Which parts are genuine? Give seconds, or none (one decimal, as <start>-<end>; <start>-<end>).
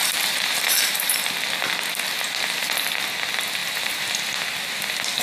1.5-3.6; 4.2-5.2